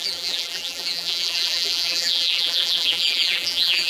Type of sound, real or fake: fake